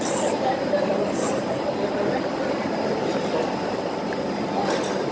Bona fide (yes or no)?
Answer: yes